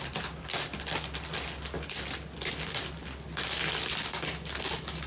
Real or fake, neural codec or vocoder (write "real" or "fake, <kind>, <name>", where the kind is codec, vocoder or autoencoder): real